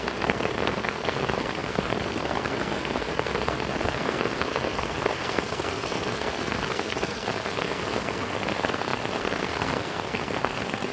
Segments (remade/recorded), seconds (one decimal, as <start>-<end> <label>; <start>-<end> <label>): 0.0-10.9 remade